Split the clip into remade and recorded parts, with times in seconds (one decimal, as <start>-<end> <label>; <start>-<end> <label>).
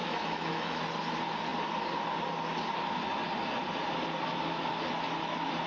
0.0-0.9 remade; 0.9-5.7 recorded